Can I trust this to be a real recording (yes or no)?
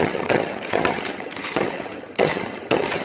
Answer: no